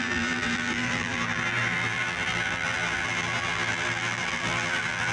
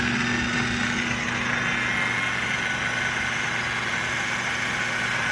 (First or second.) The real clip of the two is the second